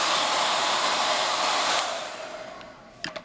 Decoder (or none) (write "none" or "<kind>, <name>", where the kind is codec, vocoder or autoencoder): none